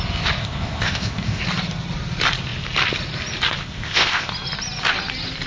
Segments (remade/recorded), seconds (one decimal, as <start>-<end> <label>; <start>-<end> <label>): 0.0-0.4 recorded; 0.4-1.4 remade; 1.4-3.6 recorded; 3.6-4.3 remade; 4.3-5.5 recorded